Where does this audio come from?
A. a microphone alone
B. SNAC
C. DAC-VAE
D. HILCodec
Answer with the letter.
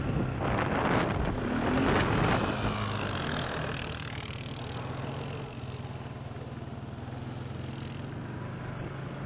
A